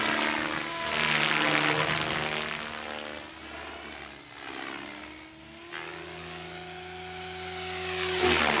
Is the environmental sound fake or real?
real